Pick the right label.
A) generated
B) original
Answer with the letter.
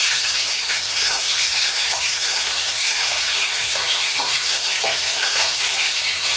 A